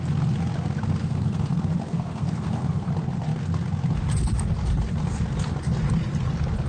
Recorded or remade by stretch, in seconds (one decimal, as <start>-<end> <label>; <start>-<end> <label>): 0.0-1.0 recorded; 1.0-2.9 remade; 2.9-6.7 recorded

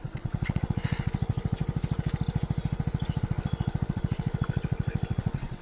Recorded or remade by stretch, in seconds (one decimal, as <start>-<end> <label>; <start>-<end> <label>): 0.0-1.6 remade; 1.6-3.2 recorded; 3.2-5.6 remade